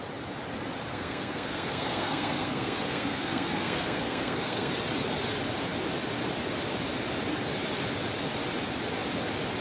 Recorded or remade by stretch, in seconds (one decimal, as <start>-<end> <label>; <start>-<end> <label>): 0.0-0.9 recorded; 0.9-4.7 remade; 4.7-9.6 recorded